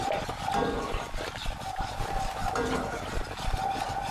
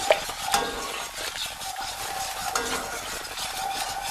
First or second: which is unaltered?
second